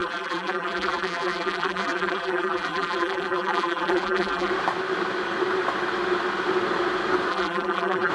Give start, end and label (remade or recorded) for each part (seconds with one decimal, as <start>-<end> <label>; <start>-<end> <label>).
0.0-4.5 remade; 4.5-7.3 recorded; 7.3-8.1 remade